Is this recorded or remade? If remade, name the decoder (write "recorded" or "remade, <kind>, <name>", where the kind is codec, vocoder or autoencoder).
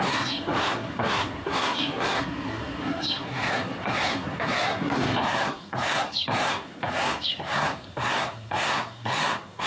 remade, codec, SNAC